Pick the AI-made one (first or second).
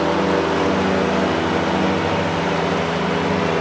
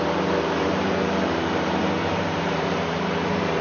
second